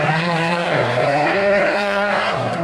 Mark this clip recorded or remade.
remade